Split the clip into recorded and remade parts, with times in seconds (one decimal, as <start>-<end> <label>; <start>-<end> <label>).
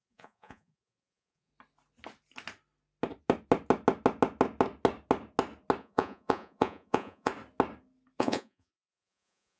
0.0-1.5 remade; 1.5-5.8 recorded; 5.8-7.3 remade; 7.3-8.2 recorded; 8.2-9.6 remade